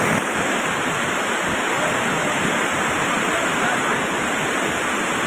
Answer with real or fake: real